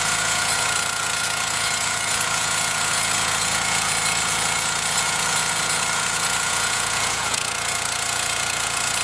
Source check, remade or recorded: remade